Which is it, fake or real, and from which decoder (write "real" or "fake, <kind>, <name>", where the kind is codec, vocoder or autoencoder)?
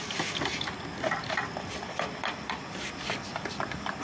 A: real